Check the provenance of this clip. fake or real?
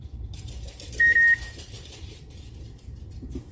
fake